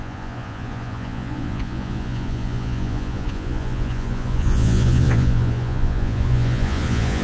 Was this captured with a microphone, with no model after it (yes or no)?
no